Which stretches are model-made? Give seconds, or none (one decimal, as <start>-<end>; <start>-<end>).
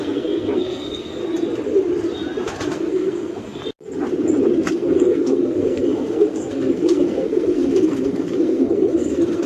0.0-1.2; 2.7-3.6; 4.7-9.5